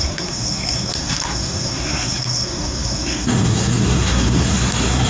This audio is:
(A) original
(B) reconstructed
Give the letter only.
B